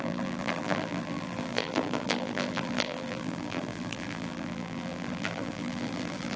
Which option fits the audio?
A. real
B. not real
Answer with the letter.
B